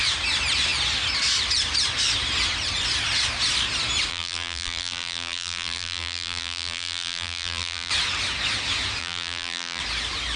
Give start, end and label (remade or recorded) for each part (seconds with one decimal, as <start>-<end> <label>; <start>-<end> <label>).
0.0-4.1 recorded; 4.1-7.9 remade; 7.9-9.0 recorded; 9.0-9.8 remade; 9.8-10.4 recorded